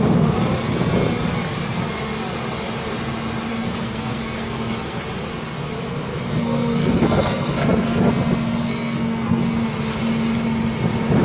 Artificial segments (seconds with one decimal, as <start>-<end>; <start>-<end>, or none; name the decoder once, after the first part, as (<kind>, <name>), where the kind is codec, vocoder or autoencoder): 3.5-5.0 (codec, SNAC); 6.1-8.1; 8.6-9.4